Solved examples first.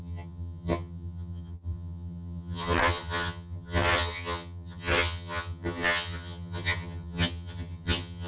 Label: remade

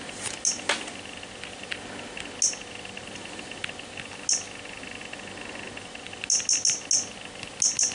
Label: recorded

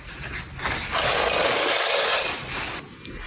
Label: recorded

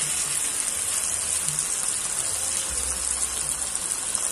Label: recorded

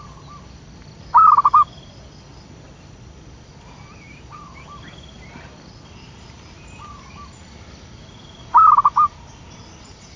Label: recorded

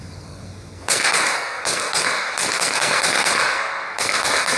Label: remade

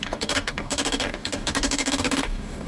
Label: remade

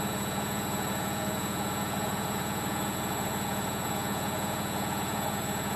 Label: remade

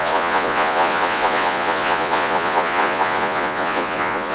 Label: remade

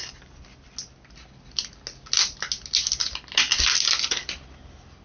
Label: recorded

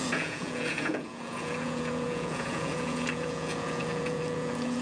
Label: remade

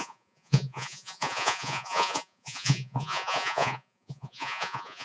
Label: remade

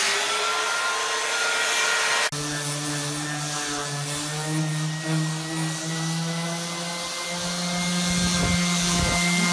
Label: recorded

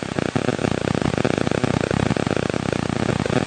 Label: recorded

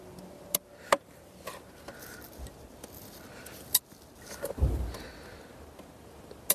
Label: recorded